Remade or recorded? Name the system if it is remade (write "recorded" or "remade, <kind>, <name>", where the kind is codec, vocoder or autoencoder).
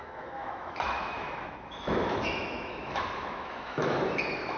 remade, autoencoder, DAC-VAE